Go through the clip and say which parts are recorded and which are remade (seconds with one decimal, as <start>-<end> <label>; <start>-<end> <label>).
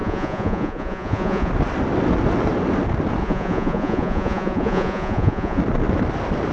0.0-1.5 remade; 1.5-3.2 recorded; 3.2-5.6 remade; 5.6-6.5 recorded